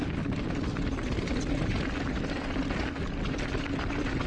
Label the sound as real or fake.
real